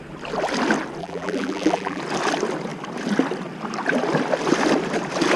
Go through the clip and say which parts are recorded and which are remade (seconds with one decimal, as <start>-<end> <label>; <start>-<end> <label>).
0.0-1.0 recorded; 1.0-2.0 remade; 2.0-5.4 recorded

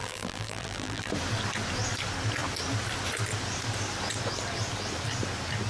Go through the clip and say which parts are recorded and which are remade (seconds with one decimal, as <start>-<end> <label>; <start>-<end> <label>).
0.0-1.1 remade; 1.1-5.7 recorded

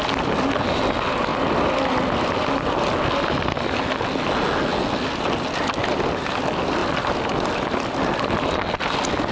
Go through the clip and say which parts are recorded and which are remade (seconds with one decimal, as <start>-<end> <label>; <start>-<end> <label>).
0.0-6.8 recorded; 6.8-8.8 remade; 8.8-9.3 recorded

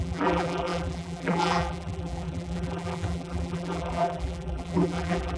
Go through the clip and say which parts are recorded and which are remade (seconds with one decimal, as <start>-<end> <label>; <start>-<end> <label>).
0.0-5.4 remade

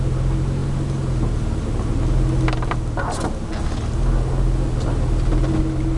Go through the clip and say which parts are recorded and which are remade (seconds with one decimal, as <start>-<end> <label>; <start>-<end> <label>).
0.0-6.0 recorded